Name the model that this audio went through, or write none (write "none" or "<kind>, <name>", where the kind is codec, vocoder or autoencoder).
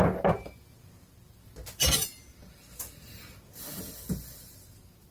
none